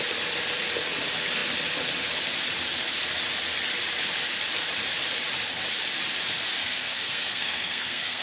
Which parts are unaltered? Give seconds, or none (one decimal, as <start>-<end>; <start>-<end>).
0.0-6.6